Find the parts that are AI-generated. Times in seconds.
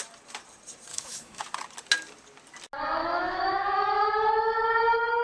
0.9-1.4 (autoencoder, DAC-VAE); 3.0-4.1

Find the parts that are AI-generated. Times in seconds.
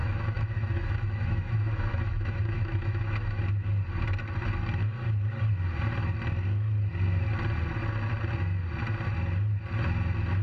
0.0-3.4 (autoencoder, DAC-VAE)